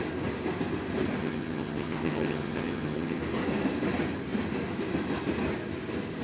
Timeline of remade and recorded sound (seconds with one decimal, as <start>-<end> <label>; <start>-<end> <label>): 0.0-1.2 recorded; 1.2-3.2 remade; 3.2-6.2 recorded